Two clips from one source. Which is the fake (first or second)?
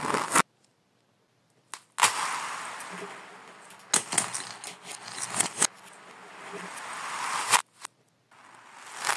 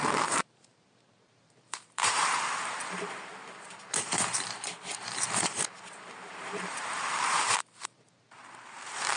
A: second